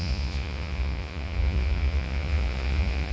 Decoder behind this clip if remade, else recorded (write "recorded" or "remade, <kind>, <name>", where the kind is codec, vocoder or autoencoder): remade, vocoder, Vocos